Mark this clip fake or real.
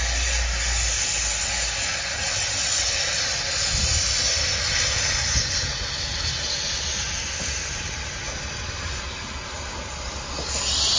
real